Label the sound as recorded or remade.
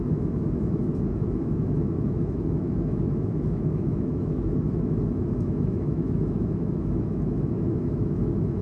remade